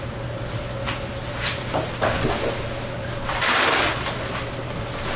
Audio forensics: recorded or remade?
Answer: recorded